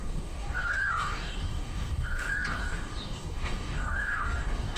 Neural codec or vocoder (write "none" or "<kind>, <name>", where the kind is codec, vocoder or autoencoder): codec, DAC